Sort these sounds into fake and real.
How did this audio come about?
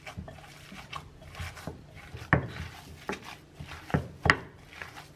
real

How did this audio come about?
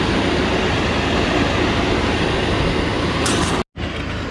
real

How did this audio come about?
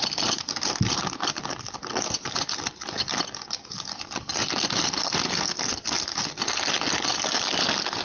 real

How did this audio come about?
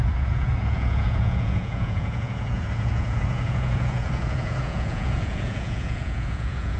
fake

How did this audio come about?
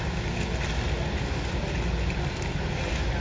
real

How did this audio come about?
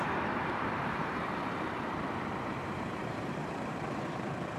fake